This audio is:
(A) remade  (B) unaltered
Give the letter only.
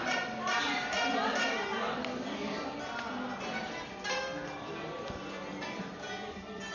B